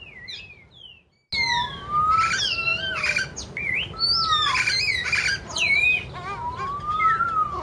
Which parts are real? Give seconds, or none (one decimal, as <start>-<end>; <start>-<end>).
0.0-7.6